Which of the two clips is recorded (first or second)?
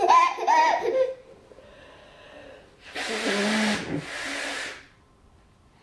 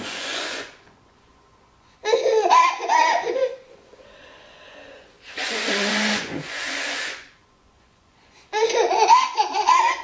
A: first